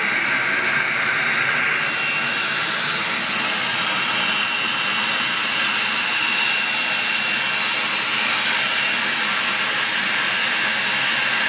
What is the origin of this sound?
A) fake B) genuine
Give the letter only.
B